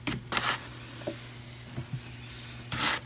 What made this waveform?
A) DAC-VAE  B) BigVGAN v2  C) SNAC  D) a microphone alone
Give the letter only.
D